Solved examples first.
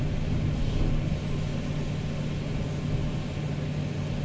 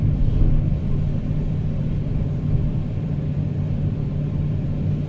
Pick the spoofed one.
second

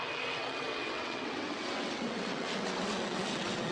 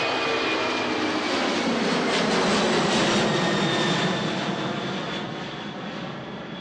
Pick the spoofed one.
first